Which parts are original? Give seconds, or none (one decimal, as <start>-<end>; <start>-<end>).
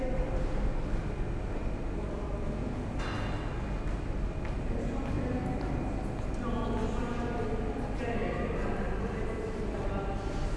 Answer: 0.0-1.6; 2.4-10.6